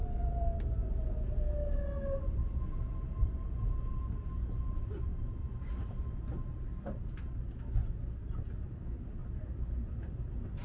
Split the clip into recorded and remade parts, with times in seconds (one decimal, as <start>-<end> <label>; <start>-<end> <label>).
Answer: 0.0-7.8 recorded; 7.8-8.7 remade; 8.7-9.2 recorded; 9.2-10.1 remade; 10.1-10.6 recorded

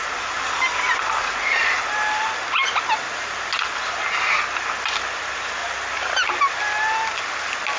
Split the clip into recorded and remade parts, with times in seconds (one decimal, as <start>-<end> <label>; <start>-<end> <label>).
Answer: 0.0-1.2 recorded; 1.2-1.8 remade; 1.8-7.8 recorded